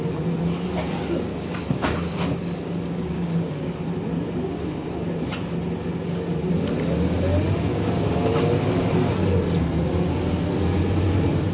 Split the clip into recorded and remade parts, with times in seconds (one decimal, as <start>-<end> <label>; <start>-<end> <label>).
0.0-1.3 recorded; 1.3-3.7 remade; 3.7-7.7 recorded; 7.7-8.4 remade; 8.4-11.5 recorded